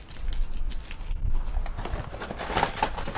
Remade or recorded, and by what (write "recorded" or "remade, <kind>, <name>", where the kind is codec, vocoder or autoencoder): recorded